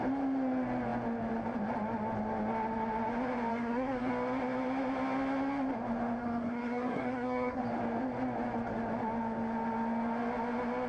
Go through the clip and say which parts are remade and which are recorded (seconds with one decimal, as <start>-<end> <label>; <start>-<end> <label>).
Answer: 0.0-3.5 recorded; 3.5-4.1 remade; 4.1-6.2 recorded; 6.2-7.6 remade; 7.6-10.9 recorded

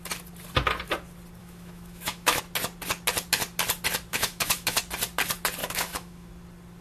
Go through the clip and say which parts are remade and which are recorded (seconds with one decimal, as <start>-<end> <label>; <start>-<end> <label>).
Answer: 0.0-1.4 recorded; 1.4-2.4 remade; 2.4-4.1 recorded; 4.1-4.8 remade; 4.8-5.6 recorded; 5.6-6.3 remade; 6.3-6.8 recorded

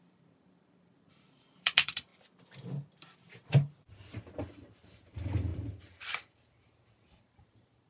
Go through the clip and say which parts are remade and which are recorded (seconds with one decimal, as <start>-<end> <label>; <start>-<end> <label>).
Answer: 0.0-2.1 remade; 2.1-4.3 recorded; 4.3-7.9 remade

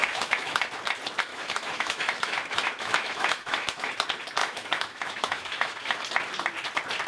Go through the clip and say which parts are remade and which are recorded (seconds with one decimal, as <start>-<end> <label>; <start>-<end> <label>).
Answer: 0.0-0.6 remade; 0.6-1.3 recorded; 1.3-3.9 remade; 3.9-4.4 recorded; 4.4-6.0 remade; 6.0-7.1 recorded

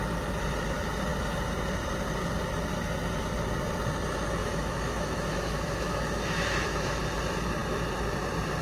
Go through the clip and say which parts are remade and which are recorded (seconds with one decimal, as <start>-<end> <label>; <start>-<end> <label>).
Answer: 0.0-4.4 recorded; 4.4-7.0 remade; 7.0-8.6 recorded